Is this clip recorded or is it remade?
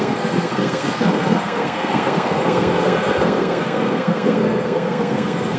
remade